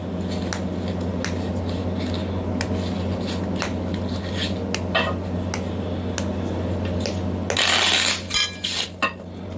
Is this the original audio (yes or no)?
yes